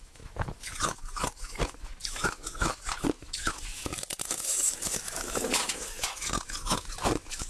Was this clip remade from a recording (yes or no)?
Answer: yes